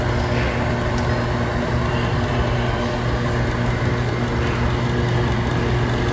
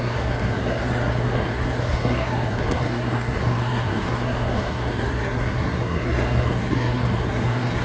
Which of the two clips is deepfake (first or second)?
second